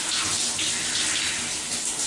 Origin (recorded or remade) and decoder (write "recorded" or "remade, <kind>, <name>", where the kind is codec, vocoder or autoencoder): recorded